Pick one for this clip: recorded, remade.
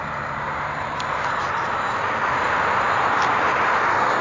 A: recorded